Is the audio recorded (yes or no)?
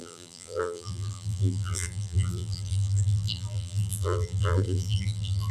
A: no